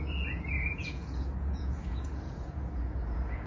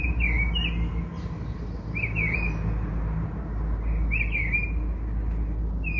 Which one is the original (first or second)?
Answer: second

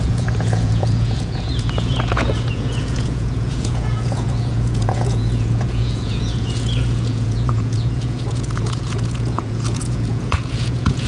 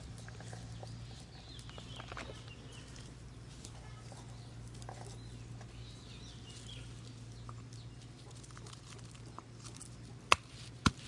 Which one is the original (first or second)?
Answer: second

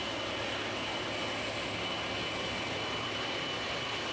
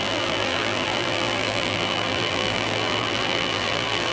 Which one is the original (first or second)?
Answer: first